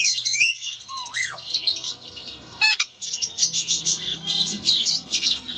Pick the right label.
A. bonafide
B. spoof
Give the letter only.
B